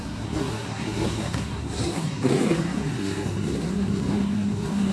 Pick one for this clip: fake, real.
fake